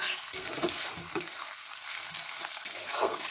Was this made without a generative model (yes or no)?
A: no